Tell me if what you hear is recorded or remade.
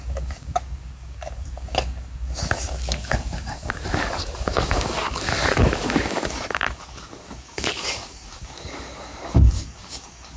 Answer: remade